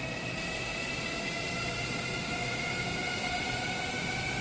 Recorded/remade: recorded